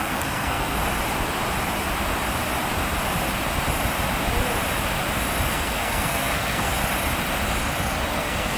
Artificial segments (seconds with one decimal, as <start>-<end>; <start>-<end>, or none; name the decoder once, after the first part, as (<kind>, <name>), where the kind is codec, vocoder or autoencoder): 0.0-0.8 (codec, SNAC); 5.5-6.7; 8.1-8.6